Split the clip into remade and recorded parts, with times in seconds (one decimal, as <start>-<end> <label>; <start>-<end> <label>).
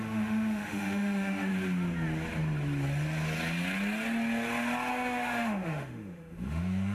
0.0-1.5 remade; 1.5-4.9 recorded; 4.9-6.9 remade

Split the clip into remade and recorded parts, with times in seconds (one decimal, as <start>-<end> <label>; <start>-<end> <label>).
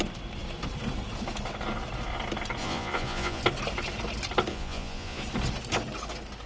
0.0-2.6 recorded; 2.6-3.4 remade; 3.4-4.5 recorded; 4.5-5.2 remade; 5.2-6.5 recorded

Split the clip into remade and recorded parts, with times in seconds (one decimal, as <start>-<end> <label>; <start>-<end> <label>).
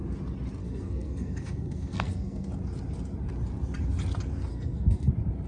0.0-0.6 recorded; 0.6-2.5 remade; 2.5-4.5 recorded; 4.5-5.1 remade; 5.1-5.5 recorded